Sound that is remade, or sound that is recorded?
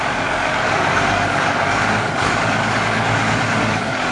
remade